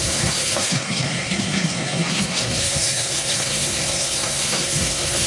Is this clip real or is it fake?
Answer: fake